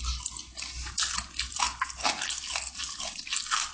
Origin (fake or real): real